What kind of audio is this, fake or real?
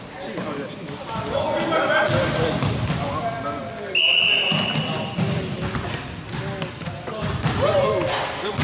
real